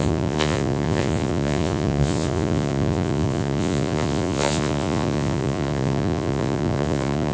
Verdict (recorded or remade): remade